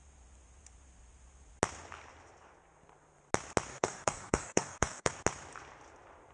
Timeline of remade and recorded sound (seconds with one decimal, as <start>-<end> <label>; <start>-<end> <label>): 0.0-3.7 recorded; 3.7-5.1 remade; 5.1-6.3 recorded